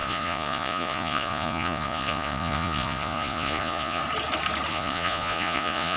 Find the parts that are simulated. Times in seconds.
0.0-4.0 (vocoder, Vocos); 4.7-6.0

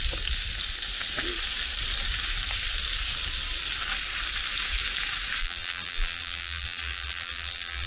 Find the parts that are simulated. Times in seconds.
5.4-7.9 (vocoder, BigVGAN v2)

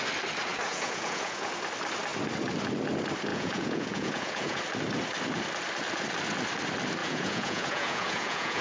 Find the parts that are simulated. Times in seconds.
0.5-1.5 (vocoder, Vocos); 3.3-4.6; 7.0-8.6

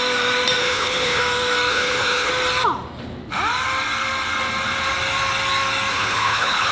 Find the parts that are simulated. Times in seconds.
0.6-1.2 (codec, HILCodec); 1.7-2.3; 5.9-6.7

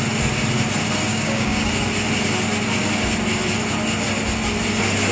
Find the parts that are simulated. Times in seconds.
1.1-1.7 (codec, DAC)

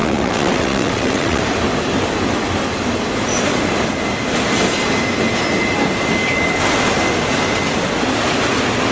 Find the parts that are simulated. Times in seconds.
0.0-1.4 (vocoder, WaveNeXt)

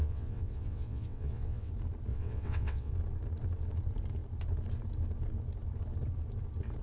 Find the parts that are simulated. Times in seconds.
0.0-1.7 (vocoder, WaveNeXt); 2.1-2.9

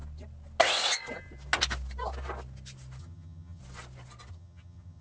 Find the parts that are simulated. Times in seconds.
3.0-3.6 (vocoder, HiFi-GAN); 4.3-5.0